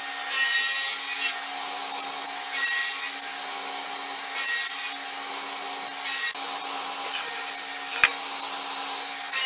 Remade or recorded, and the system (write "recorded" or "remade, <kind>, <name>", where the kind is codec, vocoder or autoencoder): recorded